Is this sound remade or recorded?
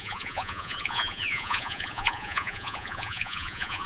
remade